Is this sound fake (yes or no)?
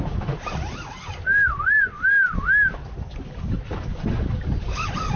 no